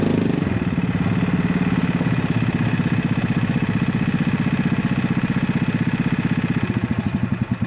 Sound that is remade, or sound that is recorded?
recorded